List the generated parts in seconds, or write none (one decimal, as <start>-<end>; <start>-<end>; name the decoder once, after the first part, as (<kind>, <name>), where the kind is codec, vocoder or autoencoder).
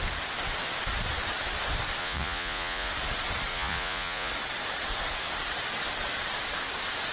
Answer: 2.0-2.9 (vocoder, Vocos); 3.5-4.3